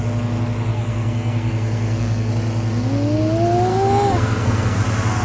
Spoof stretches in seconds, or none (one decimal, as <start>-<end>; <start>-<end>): 0.7-2.3; 3.7-4.8